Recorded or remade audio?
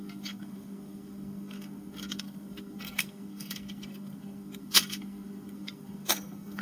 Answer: remade